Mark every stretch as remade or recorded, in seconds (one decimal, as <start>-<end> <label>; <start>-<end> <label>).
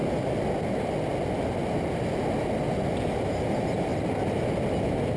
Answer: 0.0-3.1 recorded; 3.1-3.9 remade; 3.9-5.2 recorded